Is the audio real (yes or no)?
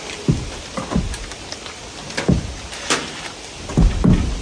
yes